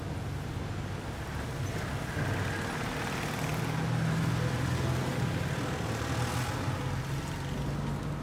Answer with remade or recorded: recorded